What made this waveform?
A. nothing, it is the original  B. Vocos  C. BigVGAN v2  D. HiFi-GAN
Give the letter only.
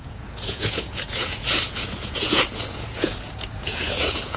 B